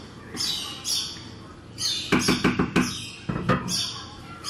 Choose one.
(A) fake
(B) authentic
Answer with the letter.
B